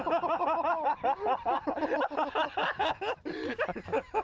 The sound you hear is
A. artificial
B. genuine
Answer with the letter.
B